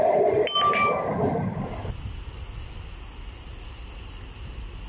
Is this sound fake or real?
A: real